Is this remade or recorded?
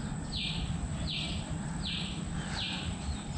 recorded